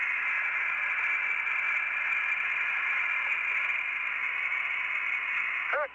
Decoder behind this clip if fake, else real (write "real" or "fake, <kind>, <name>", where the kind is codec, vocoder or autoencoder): real